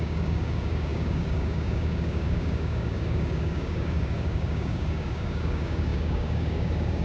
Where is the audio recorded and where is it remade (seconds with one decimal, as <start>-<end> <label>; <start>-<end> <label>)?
0.0-7.0 remade